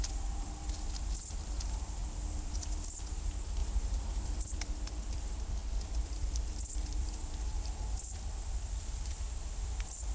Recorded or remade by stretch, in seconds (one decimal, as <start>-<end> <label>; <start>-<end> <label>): 0.0-2.0 remade; 2.0-2.5 recorded; 2.5-10.1 remade